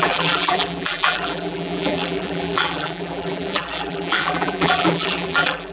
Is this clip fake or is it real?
fake